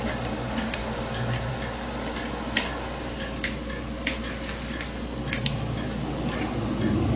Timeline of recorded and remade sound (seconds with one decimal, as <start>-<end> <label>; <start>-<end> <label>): 0.0-7.2 recorded